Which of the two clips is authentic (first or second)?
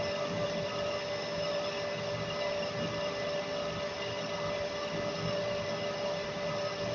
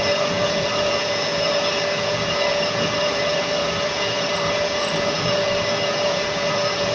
first